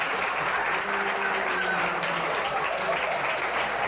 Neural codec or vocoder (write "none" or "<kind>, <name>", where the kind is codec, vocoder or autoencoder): none